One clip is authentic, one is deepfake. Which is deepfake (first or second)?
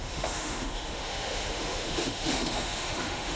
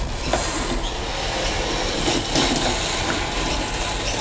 first